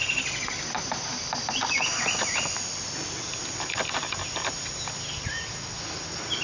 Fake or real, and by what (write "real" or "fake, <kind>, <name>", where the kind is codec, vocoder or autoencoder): real